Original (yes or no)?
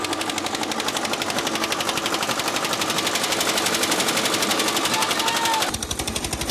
yes